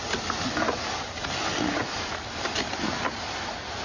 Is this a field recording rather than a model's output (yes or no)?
yes